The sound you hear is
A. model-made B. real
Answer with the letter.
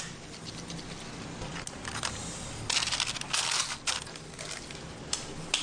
B